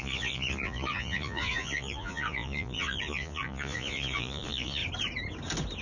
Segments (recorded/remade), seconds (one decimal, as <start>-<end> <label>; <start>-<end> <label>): 0.0-4.8 remade; 4.8-5.8 recorded